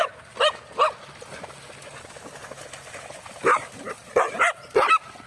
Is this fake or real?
real